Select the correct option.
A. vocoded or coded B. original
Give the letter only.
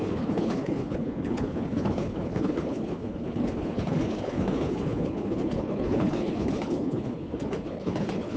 A